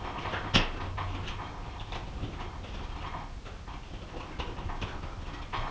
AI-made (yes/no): no